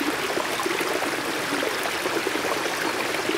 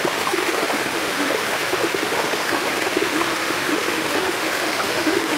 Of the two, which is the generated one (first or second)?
second